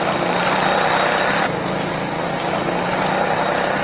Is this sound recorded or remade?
recorded